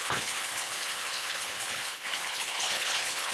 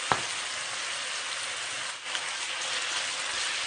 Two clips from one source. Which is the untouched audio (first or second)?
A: second